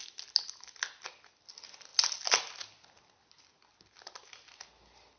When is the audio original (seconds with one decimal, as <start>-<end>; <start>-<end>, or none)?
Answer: 0.0-5.2

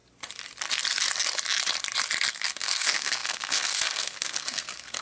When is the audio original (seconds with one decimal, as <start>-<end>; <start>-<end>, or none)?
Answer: 0.0-2.3

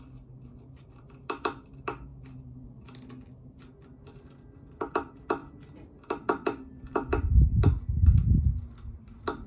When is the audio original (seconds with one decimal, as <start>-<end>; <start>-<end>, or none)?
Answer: 0.0-5.4; 7.4-9.5

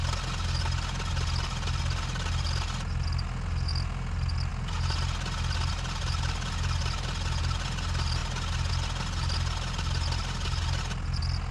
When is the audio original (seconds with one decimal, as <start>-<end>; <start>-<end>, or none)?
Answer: 0.0-11.5

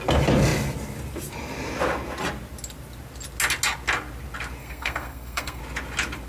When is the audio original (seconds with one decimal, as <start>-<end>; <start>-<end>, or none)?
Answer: 0.0-4.6; 5.6-6.3